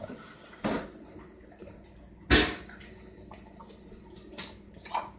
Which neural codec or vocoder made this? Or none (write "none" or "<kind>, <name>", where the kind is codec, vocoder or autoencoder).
none